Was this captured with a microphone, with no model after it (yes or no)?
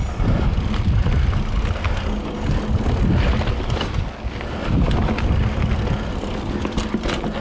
yes